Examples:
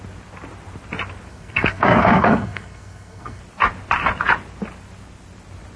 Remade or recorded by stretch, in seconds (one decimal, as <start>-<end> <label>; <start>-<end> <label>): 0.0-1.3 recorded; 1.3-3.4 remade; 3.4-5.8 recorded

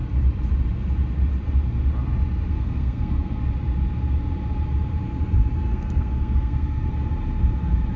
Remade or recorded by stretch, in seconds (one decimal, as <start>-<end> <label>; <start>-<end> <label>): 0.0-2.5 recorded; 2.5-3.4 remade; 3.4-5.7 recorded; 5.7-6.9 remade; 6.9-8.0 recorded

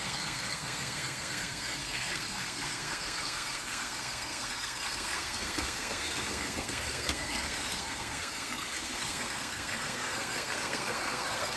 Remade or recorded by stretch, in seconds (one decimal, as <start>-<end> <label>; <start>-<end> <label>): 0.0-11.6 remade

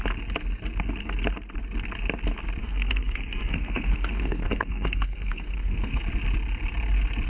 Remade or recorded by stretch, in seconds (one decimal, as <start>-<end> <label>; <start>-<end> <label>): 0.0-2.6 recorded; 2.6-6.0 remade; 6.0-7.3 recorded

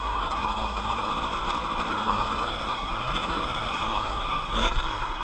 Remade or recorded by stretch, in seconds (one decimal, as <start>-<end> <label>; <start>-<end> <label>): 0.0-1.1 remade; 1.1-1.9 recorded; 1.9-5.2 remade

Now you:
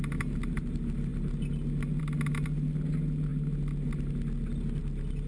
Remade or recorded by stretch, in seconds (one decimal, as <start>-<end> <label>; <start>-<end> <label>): 0.0-5.3 recorded

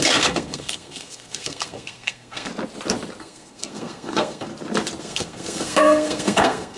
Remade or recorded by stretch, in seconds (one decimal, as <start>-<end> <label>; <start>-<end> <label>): 0.0-2.5 remade; 2.5-3.2 recorded; 3.2-4.5 remade; 4.5-5.0 recorded; 5.0-6.8 remade

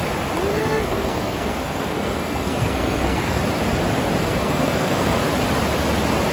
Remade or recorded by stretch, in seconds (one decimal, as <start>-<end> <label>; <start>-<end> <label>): 0.0-0.5 recorded; 0.5-3.4 remade; 3.4-4.2 recorded; 4.2-5.2 remade; 5.2-6.3 recorded